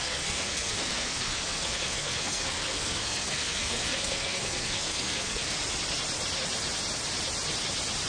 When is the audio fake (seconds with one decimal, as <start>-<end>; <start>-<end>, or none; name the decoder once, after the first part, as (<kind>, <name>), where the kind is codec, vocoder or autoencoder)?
0.0-5.6 (codec, SNAC)

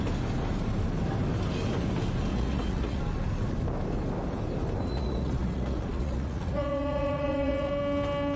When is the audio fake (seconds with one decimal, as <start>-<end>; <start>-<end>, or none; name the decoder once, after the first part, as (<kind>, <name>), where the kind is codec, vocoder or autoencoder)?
2.3-3.0 (vocoder, Vocos); 4.9-7.7

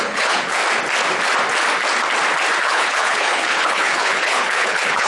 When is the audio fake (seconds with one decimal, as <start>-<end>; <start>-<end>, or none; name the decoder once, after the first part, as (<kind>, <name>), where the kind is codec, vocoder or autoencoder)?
0.0-0.6 (codec, HILCodec); 2.6-5.1

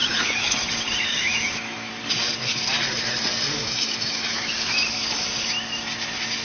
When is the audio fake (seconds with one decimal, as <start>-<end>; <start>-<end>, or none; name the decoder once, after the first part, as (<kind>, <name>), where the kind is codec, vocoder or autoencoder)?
0.0-0.7 (autoencoder, DAC-VAE); 1.1-1.9; 3.6-4.5